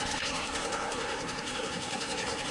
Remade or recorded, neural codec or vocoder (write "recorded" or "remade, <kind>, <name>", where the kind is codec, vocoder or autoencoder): remade, codec, SNAC